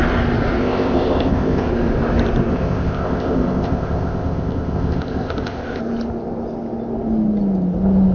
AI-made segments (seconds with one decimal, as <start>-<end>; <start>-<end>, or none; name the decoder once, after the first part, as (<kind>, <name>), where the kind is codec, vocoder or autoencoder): 0.6-1.7 (codec, ZipCodec); 2.5-5.8